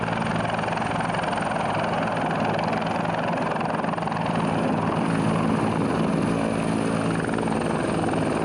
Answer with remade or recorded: recorded